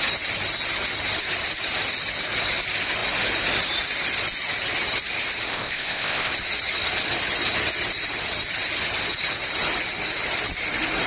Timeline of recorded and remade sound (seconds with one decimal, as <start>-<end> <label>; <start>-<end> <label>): 0.0-5.5 recorded; 5.5-6.3 remade; 6.3-11.1 recorded